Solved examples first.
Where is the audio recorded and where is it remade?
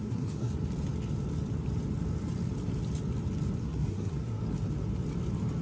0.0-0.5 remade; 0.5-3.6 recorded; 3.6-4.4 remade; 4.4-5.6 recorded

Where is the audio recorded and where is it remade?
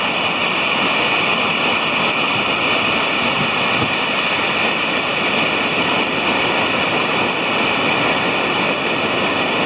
0.0-9.7 recorded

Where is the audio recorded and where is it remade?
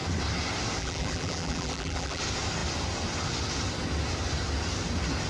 0.0-0.8 recorded; 0.8-2.2 remade; 2.2-5.3 recorded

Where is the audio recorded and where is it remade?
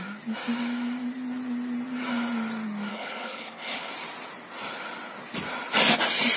0.0-2.9 recorded; 2.9-3.9 remade; 3.9-6.4 recorded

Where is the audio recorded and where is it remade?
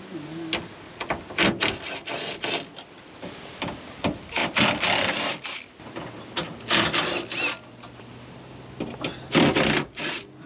0.0-10.5 recorded